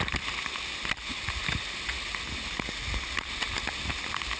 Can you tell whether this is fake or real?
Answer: real